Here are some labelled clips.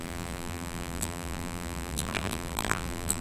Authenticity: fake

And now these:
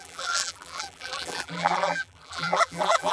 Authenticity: fake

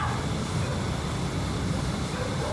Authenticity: real